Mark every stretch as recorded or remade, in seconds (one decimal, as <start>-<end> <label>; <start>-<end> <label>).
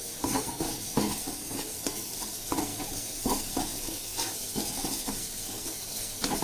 0.0-6.4 remade